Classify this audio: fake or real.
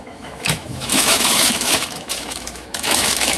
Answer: fake